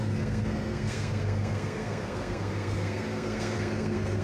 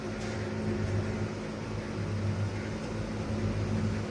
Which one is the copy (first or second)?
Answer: first